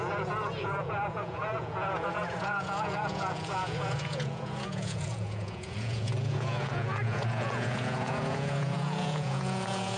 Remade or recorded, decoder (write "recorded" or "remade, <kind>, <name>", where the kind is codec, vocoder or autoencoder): remade, vocoder, Vocos